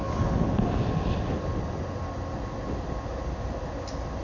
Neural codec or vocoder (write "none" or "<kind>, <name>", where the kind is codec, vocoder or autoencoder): none